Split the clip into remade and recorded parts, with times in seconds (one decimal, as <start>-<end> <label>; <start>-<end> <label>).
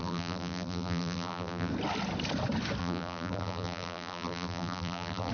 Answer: 0.0-1.7 remade; 1.7-2.8 recorded; 2.8-5.3 remade